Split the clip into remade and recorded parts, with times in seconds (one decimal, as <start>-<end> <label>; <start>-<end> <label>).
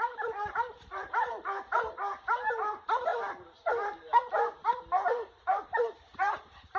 0.0-6.8 remade